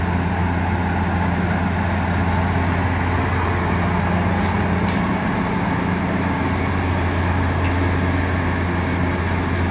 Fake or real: real